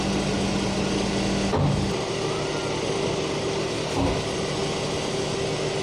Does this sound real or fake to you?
real